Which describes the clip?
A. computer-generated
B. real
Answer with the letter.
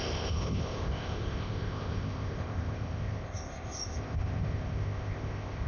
A